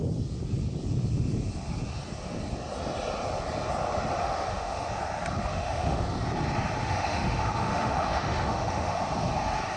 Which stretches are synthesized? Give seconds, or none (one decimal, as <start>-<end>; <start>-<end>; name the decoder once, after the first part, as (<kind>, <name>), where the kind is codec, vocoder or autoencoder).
4.2-4.9 (autoencoder, DAC-VAE); 5.5-6.1; 6.8-9.0